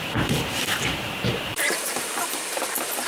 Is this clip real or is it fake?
fake